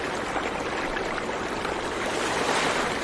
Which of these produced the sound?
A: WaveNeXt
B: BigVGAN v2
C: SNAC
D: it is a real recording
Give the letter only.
D